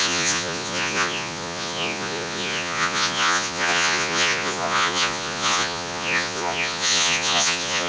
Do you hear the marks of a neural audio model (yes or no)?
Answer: yes